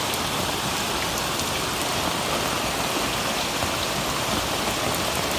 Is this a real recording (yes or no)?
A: yes